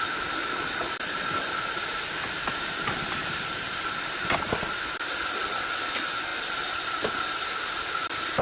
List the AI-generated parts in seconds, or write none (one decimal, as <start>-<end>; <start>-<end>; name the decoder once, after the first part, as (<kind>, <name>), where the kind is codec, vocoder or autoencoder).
none